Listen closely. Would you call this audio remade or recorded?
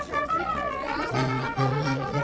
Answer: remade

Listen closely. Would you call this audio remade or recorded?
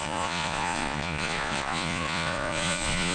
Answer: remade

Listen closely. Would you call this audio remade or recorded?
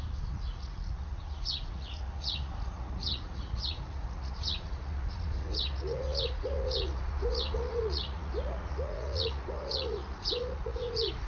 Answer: remade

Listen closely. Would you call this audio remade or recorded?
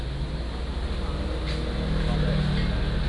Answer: recorded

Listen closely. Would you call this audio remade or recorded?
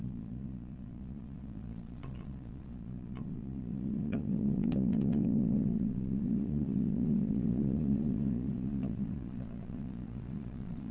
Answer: remade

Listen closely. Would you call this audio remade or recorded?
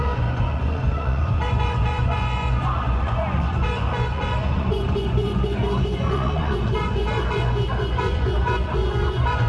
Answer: remade